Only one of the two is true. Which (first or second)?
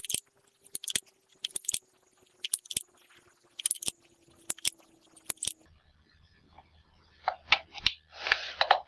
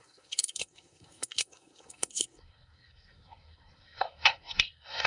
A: first